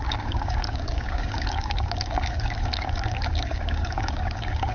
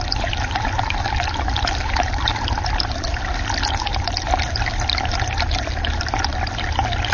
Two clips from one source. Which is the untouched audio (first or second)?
second